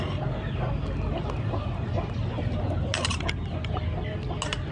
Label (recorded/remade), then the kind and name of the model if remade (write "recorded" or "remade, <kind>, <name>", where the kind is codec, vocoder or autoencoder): recorded